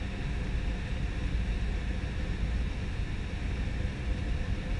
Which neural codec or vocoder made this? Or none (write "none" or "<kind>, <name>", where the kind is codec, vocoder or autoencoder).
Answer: none